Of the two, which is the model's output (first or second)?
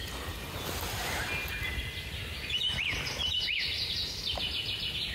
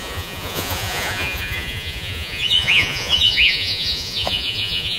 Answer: second